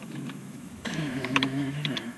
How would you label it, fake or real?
fake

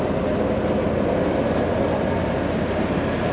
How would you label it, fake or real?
real